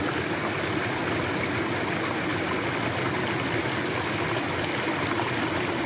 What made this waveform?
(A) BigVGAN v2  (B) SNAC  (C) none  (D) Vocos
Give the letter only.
C